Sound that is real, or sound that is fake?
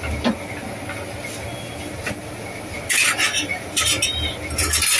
real